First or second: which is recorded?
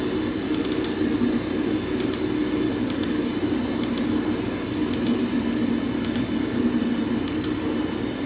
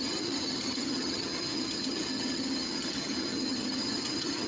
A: first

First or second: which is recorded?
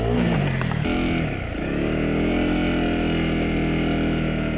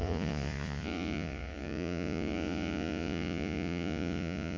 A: first